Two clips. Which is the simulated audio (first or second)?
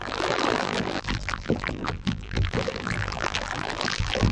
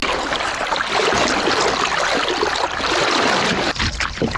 first